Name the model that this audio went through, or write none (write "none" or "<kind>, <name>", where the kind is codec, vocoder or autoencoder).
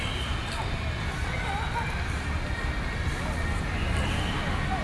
none